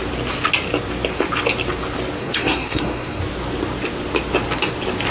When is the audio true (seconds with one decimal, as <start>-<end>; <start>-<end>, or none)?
0.0-2.2; 3.2-5.1